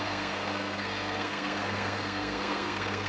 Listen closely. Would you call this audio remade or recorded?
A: remade